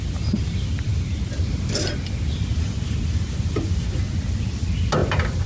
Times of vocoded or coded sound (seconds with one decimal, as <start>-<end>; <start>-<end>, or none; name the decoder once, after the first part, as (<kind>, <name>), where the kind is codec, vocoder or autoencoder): none